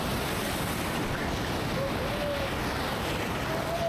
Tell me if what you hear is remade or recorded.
recorded